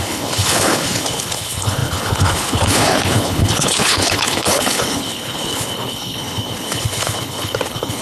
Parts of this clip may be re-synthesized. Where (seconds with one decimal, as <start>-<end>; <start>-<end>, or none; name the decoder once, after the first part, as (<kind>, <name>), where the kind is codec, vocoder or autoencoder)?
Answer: 0.0-8.0 (codec, HILCodec)